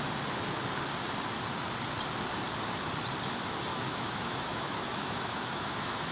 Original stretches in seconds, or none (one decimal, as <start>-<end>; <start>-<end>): 0.0-3.7